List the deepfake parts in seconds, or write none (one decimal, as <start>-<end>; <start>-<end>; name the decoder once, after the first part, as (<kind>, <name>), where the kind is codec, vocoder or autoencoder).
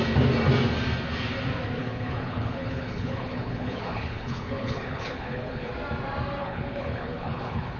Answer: 1.8-5.7 (codec, HILCodec); 6.4-7.8